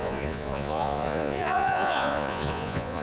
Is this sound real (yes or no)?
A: no